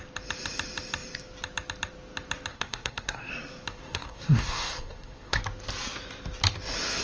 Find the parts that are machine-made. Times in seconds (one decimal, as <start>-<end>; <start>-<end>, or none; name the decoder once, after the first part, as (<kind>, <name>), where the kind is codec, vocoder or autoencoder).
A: 2.5-3.3 (codec, SNAC); 3.7-5.4